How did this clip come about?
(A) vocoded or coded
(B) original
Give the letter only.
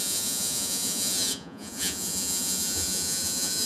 A